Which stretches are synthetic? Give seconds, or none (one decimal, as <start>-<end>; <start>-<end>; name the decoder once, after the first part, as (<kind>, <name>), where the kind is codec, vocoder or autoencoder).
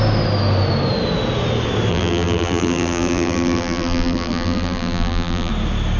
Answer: 1.9-5.5 (vocoder, BigVGAN v2)